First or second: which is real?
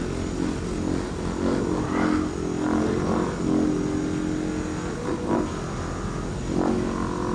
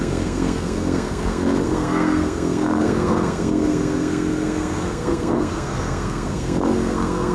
first